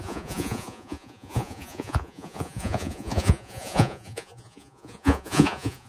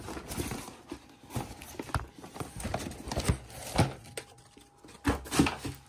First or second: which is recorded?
second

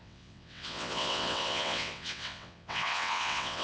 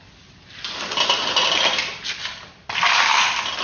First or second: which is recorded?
second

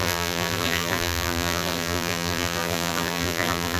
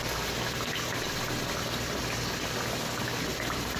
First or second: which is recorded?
second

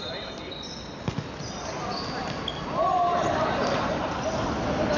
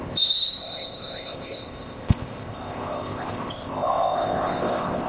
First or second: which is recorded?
first